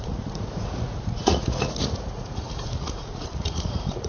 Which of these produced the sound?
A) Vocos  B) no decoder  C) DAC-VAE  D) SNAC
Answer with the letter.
A